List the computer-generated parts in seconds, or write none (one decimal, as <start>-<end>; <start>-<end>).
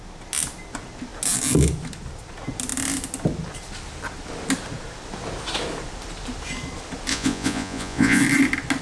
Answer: 7.1-8.2